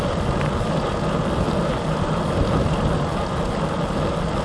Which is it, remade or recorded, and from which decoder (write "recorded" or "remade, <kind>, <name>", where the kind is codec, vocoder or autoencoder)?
recorded